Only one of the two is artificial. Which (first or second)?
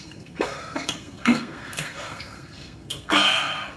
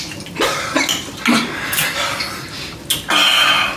first